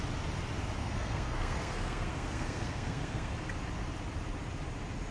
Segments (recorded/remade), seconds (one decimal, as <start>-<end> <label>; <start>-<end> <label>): 0.0-0.8 recorded; 0.8-3.3 remade; 3.3-5.1 recorded